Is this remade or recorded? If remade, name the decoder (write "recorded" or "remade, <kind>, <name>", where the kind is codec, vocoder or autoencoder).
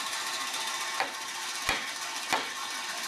recorded